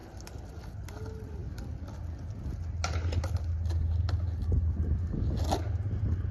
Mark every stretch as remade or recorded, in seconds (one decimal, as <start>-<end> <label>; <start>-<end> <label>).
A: 0.0-6.3 recorded

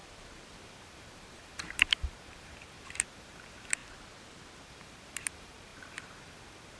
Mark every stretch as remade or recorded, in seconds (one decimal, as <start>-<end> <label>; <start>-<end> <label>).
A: 0.0-0.6 recorded; 0.6-3.8 remade; 3.8-4.6 recorded; 4.6-6.8 remade

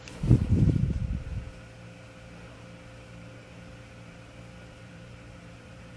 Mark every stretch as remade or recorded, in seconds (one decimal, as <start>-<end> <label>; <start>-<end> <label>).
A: 0.0-1.3 remade; 1.3-4.7 recorded; 4.7-6.0 remade

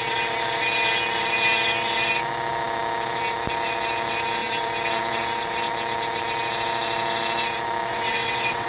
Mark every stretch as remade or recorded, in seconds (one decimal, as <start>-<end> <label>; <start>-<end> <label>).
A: 0.0-7.9 recorded; 7.9-8.7 remade

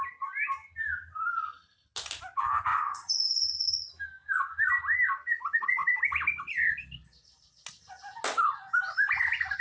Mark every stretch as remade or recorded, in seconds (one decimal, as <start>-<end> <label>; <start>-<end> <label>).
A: 0.0-2.7 recorded; 2.7-3.9 remade; 3.9-9.6 recorded

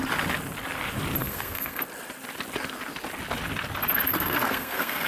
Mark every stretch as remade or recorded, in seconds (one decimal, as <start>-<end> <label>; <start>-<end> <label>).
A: 0.0-1.2 recorded; 1.2-1.8 remade; 1.8-4.1 recorded; 4.1-5.1 remade

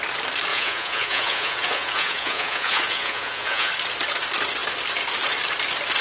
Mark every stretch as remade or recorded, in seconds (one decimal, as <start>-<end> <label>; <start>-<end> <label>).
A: 0.0-0.5 recorded; 0.5-3.7 remade; 3.7-6.0 recorded

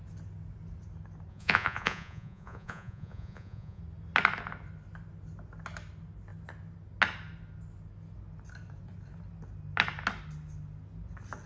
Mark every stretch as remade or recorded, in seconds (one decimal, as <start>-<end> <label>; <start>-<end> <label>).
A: 0.0-1.3 recorded; 1.3-3.8 remade; 3.8-11.5 recorded